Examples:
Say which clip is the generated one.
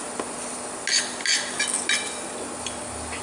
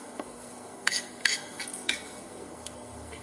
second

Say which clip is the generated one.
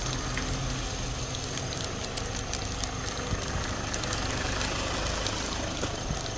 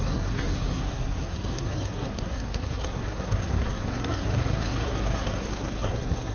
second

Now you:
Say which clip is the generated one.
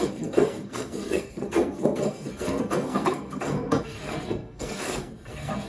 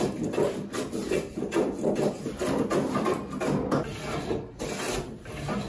first